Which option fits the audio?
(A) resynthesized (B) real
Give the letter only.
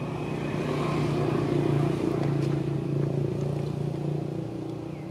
B